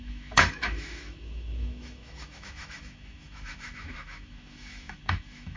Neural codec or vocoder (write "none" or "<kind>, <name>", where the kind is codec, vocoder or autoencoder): autoencoder, DAC-VAE